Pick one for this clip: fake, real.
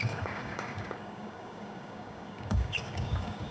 fake